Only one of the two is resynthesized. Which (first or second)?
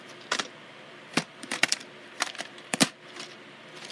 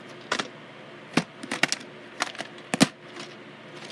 first